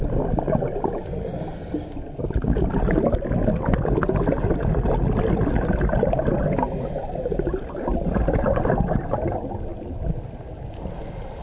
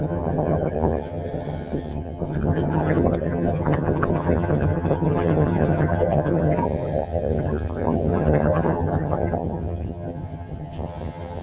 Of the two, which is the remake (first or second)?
second